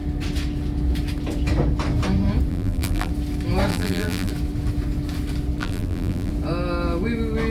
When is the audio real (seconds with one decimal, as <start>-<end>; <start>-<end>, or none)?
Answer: 0.0-2.5; 3.1-3.7; 4.3-5.6; 6.3-7.5